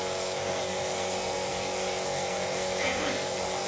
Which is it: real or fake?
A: fake